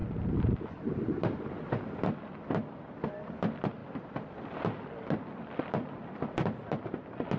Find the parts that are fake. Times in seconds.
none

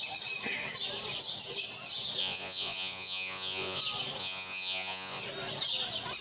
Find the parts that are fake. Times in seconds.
2.2-3.8; 4.2-5.2

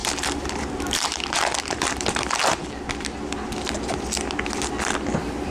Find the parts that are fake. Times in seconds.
0.0-2.2